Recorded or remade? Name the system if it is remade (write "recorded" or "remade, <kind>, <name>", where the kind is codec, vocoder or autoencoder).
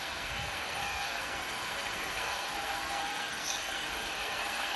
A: remade, codec, SNAC